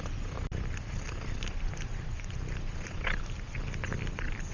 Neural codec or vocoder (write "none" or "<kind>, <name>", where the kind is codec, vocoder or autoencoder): none